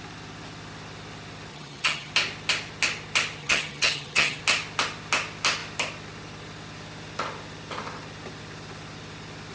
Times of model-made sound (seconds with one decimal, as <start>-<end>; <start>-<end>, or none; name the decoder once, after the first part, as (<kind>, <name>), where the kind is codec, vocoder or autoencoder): 1.5-2.1 (vocoder, HiFi-GAN); 3.4-4.4